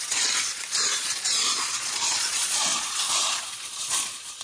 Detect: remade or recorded remade